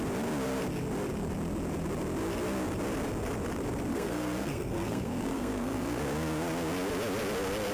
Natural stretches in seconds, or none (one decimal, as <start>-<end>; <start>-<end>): 0.0-3.9; 6.0-7.7